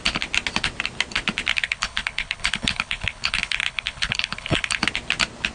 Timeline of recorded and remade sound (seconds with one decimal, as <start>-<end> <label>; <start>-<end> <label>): 0.0-1.5 recorded; 1.5-4.8 remade; 4.8-5.5 recorded